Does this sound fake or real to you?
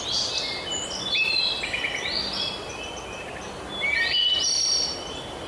real